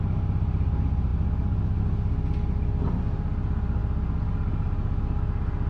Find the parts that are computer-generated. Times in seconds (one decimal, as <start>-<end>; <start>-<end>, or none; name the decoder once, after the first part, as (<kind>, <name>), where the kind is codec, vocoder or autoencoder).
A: none